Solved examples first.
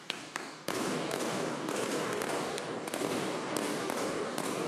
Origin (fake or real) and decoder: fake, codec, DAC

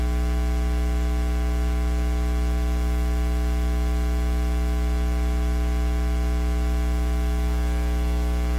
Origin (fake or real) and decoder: real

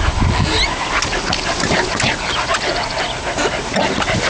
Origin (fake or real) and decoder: real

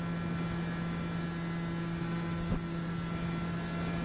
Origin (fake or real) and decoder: real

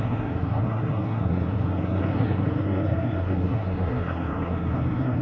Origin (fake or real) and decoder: fake, codec, SNAC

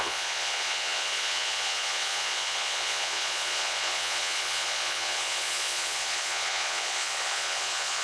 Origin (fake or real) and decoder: fake, vocoder, Vocos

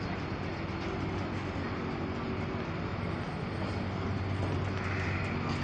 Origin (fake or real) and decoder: real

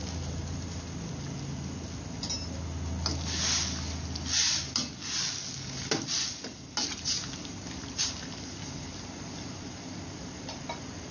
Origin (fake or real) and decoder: real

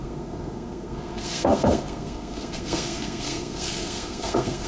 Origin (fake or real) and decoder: fake, codec, SNAC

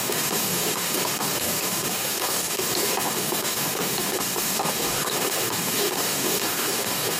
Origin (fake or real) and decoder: fake, codec, DAC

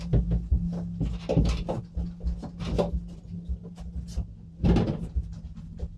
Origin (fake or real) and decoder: real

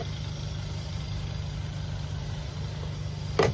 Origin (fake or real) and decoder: real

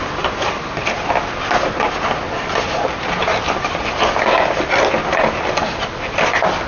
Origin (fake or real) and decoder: real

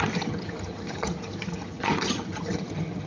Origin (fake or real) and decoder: fake, vocoder, HiFi-GAN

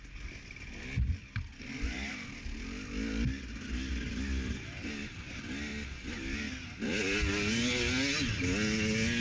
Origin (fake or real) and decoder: real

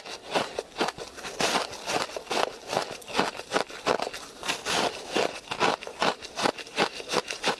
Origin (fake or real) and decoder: real